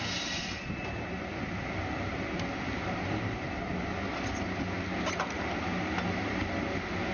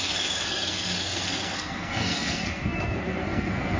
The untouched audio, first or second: first